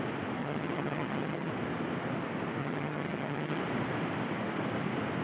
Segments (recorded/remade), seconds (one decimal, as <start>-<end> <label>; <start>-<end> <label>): 0.0-0.4 recorded; 0.4-1.5 remade; 1.5-2.6 recorded; 2.6-3.6 remade; 3.6-5.2 recorded